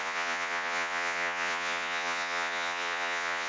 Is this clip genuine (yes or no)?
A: no